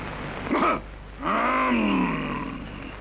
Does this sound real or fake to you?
real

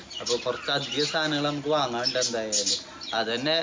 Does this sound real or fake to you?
real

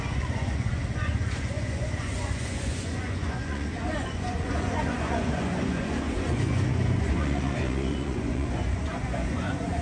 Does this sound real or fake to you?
fake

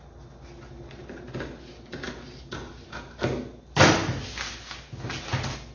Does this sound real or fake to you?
real